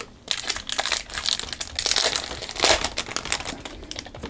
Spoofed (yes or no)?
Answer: no